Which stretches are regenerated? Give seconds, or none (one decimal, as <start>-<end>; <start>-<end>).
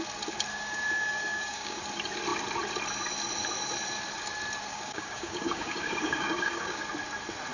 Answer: 0.5-1.8; 4.7-6.8